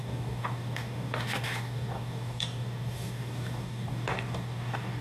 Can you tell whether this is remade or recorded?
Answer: remade